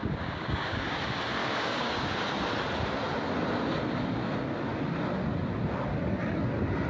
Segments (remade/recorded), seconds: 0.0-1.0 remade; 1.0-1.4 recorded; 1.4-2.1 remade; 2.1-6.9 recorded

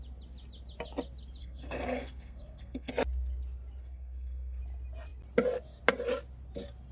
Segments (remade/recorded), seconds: 0.0-1.4 recorded; 1.4-2.9 remade; 2.9-3.8 recorded; 3.8-4.6 remade; 4.6-6.9 recorded